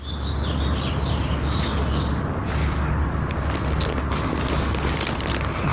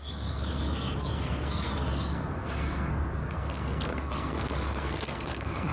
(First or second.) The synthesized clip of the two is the second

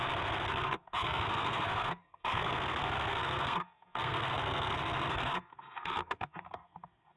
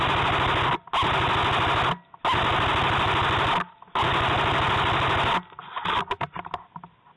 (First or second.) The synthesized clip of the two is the first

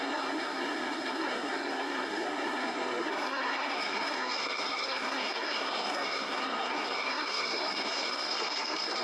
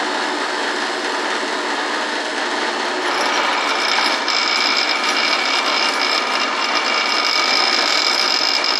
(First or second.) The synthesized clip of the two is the first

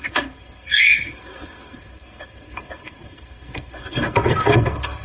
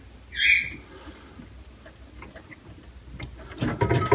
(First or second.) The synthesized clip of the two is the first